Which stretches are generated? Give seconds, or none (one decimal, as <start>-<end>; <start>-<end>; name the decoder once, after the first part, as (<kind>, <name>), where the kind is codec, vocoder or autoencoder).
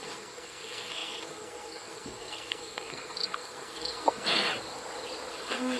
0.0-4.5 (codec, SNAC); 5.3-5.8